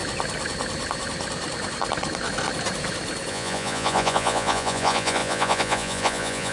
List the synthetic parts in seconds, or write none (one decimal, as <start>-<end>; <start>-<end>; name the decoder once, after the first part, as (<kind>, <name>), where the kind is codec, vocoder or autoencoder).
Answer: 3.3-6.5 (vocoder, Vocos)